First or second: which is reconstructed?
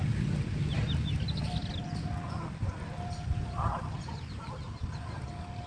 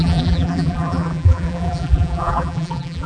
second